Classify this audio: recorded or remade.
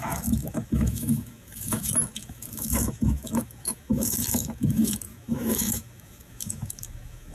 remade